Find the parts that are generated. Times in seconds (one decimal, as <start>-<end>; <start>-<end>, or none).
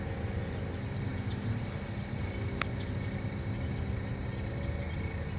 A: none